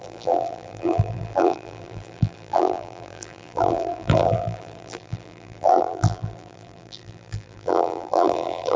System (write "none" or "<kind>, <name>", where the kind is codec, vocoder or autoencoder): vocoder, BigVGAN v2